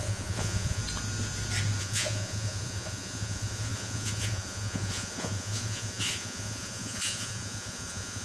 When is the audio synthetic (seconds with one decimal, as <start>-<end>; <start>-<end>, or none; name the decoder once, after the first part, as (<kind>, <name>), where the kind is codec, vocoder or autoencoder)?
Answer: 0.0-0.8 (vocoder, Vocos); 1.8-8.2